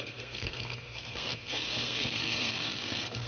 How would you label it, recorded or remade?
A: remade